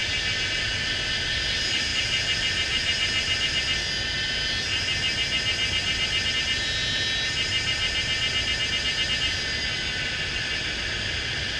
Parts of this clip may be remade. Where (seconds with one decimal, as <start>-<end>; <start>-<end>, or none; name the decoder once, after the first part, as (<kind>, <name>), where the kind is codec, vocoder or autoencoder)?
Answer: none